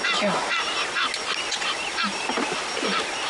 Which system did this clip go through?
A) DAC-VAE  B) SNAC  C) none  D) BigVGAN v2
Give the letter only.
C